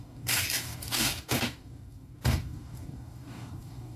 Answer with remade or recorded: remade